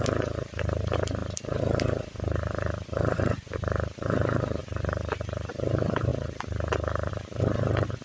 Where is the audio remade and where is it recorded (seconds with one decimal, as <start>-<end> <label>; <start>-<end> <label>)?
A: 0.0-4.6 remade; 4.6-5.5 recorded; 5.5-6.1 remade; 6.1-7.1 recorded; 7.1-8.0 remade